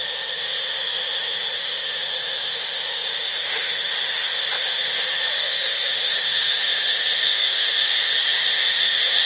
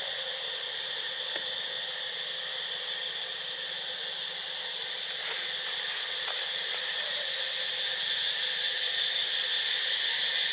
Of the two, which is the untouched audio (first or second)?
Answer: second